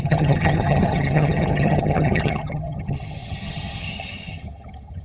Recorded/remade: remade